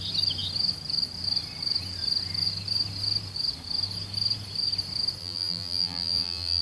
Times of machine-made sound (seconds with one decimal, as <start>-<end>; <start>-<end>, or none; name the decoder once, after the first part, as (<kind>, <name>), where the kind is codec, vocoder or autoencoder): 5.2-6.6 (vocoder, BigVGAN v2)